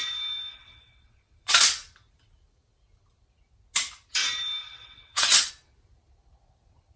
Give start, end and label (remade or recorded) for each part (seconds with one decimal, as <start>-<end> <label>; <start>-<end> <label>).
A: 0.0-0.5 recorded; 0.5-1.6 remade; 1.6-4.6 recorded; 4.6-5.5 remade; 5.5-7.0 recorded